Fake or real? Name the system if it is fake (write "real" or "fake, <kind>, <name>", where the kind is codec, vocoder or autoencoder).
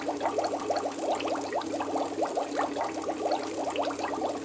real